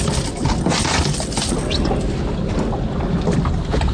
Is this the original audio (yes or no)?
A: yes